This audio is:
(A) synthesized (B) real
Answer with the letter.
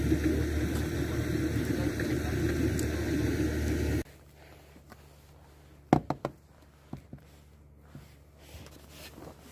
B